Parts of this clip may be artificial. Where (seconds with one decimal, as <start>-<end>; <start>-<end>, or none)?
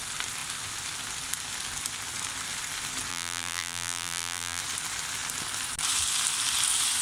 3.1-4.6